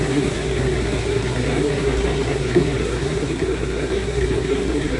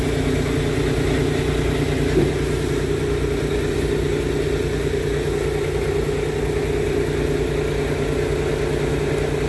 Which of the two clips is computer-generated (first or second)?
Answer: first